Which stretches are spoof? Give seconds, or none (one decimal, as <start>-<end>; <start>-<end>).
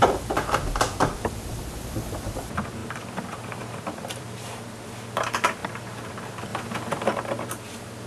2.8-4.6